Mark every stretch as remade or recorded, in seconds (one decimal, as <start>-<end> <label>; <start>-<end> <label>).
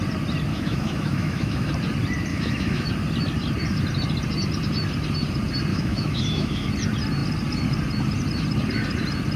0.0-0.5 recorded; 0.5-1.7 remade; 1.7-2.3 recorded; 2.3-2.9 remade; 2.9-5.7 recorded; 5.7-6.7 remade; 6.7-9.4 recorded